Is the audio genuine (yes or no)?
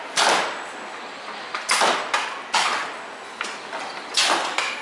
yes